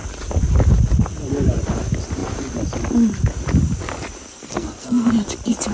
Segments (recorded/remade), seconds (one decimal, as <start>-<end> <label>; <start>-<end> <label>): 0.0-4.3 recorded; 4.3-5.1 remade; 5.1-5.7 recorded